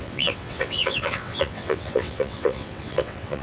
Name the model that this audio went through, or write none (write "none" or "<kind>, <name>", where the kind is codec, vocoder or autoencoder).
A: vocoder, WaveNeXt